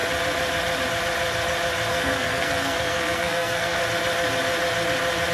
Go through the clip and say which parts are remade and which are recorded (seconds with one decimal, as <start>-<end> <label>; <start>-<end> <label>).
0.0-1.9 recorded; 1.9-3.8 remade; 3.8-5.3 recorded